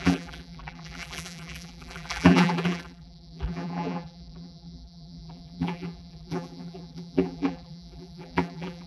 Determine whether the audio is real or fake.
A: fake